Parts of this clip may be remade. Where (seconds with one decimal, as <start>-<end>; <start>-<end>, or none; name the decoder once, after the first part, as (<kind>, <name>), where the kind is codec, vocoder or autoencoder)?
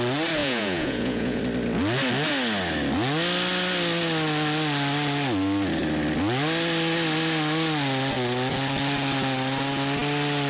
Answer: 0.4-1.4 (vocoder, Vocos)